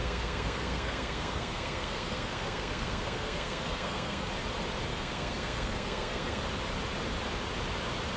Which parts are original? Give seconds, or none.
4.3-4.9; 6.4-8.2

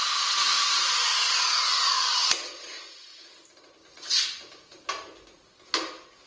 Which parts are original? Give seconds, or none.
0.0-6.3

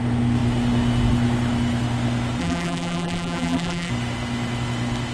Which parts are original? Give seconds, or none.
0.0-2.4; 3.9-5.1

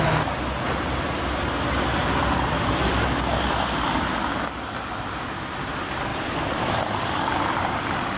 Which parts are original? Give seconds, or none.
0.0-6.1; 7.3-8.2

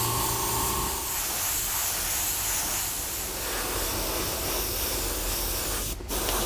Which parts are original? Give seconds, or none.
0.0-6.5

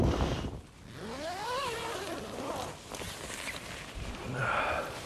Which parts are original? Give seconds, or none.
0.0-5.1

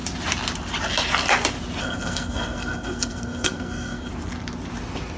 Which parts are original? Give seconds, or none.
0.0-1.8; 4.1-5.2